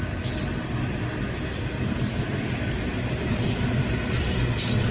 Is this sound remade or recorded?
recorded